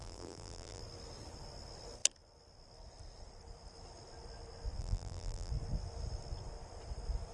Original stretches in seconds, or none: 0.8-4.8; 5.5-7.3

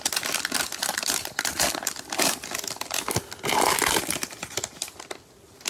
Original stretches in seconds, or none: 0.0-0.9; 1.5-5.7

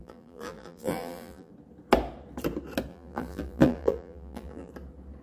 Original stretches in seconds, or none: 1.5-2.9; 4.7-5.2

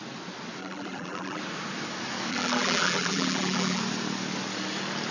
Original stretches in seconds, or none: 0.0-0.6; 1.4-2.3; 3.8-5.1

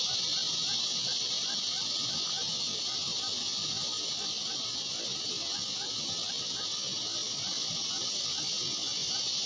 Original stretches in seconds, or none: 0.0-9.5

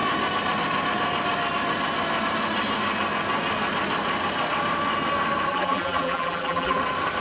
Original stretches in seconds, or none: 0.0-5.5; 6.8-7.2

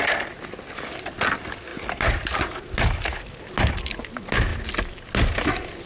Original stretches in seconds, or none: 0.0-5.9

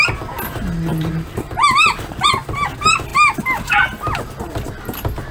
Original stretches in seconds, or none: 0.0-0.9; 2.3-5.3